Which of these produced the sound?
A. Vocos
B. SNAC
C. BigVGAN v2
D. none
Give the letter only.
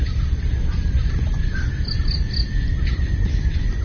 D